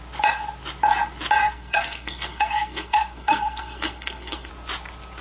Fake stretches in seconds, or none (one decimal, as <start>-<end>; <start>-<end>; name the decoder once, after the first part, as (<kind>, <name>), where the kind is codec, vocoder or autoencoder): 1.4-4.5 (codec, SNAC)